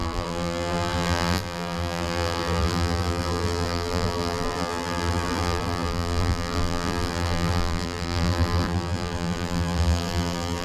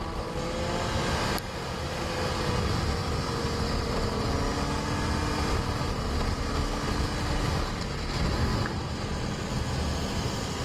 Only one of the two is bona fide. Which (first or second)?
second